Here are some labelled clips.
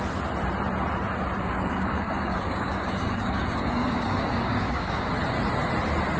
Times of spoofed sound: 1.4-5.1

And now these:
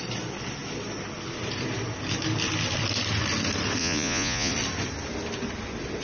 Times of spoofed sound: 3.8-4.5

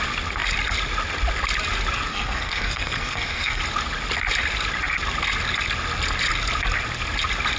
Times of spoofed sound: 2.1-3.6

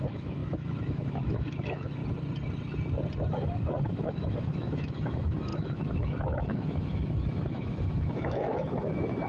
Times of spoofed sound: 0.0-2.0; 3.8-9.3

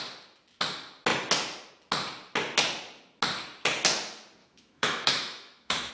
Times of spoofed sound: 4.4-5.9

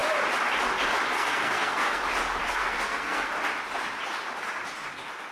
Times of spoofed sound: 1.1-2.0; 2.4-3.3

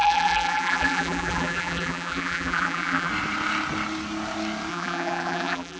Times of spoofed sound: 0.0-3.1; 4.7-5.8

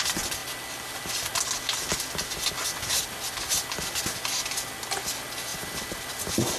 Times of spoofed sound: none